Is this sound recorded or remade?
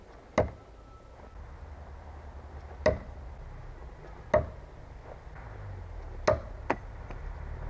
recorded